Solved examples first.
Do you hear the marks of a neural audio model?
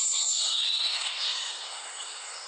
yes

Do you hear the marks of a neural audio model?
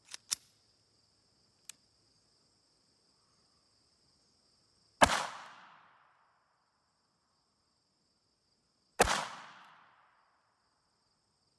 no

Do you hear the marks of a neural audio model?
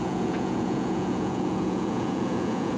yes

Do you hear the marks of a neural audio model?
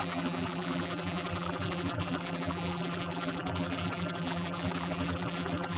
yes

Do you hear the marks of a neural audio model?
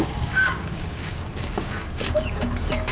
yes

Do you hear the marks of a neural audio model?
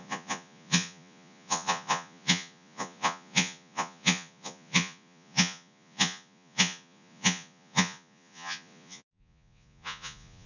yes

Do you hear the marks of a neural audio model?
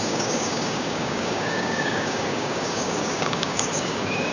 yes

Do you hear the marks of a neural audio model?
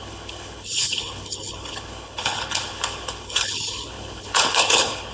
yes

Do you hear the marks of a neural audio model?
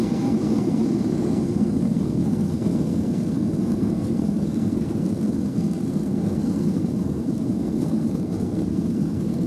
yes